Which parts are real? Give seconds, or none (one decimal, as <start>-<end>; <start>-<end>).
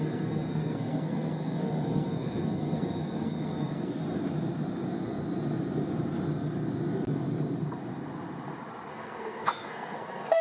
4.0-8.9